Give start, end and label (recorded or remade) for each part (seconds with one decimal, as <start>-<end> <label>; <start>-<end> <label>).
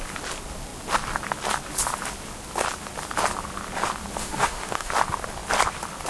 0.0-4.2 recorded; 4.2-4.9 remade; 4.9-6.1 recorded